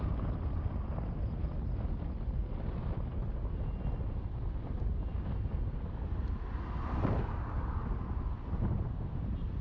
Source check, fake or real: real